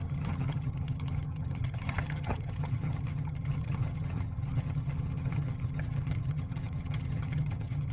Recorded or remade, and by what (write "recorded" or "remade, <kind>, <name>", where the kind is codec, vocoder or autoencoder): remade, vocoder, HiFi-GAN